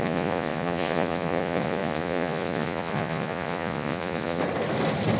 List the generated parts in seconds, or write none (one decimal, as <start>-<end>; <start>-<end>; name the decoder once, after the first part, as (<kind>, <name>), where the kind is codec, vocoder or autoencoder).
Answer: 0.0-4.4 (vocoder, Vocos)